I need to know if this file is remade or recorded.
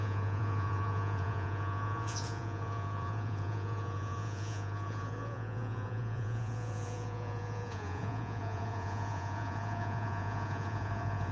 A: remade